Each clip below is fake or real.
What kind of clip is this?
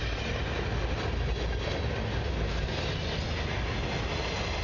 real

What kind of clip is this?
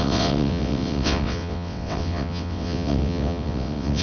fake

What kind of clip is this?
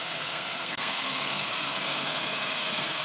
fake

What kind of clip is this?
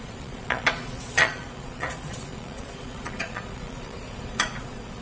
fake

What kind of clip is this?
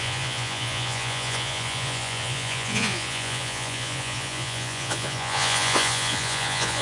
fake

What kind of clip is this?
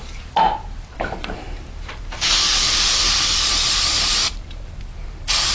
fake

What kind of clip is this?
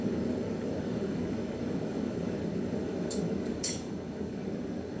fake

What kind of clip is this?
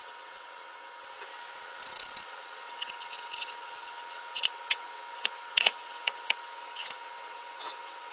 fake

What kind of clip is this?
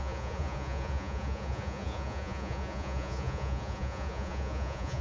fake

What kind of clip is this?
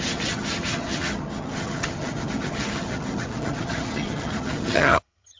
fake